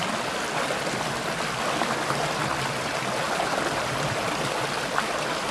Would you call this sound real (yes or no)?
yes